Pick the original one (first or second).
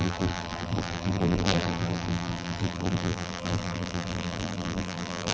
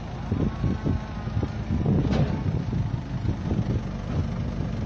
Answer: second